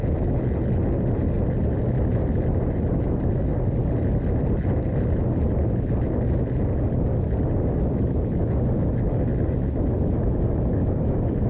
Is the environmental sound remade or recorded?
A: recorded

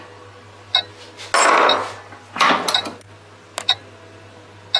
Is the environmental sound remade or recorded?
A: recorded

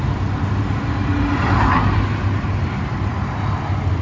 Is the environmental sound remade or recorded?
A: recorded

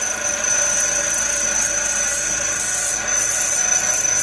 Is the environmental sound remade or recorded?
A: recorded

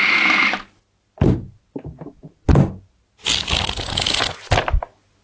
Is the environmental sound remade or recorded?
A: recorded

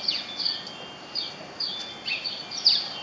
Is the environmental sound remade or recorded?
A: recorded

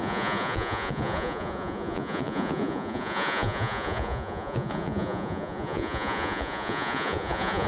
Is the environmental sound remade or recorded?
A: remade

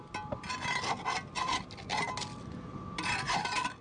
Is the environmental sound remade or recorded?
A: recorded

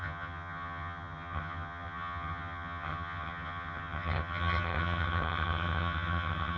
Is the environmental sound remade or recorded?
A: remade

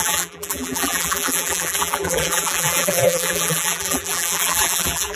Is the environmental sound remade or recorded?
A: remade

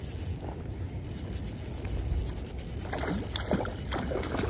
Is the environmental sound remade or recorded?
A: recorded